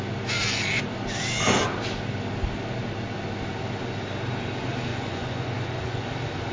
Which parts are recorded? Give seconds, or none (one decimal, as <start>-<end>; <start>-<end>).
0.0-4.9; 6.1-6.5